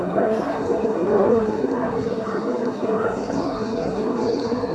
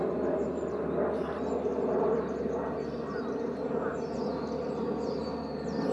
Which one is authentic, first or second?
second